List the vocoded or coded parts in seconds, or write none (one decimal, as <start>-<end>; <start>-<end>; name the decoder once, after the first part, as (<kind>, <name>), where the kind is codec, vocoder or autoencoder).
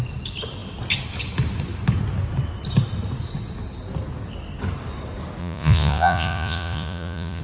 5.4-7.4 (vocoder, Vocos)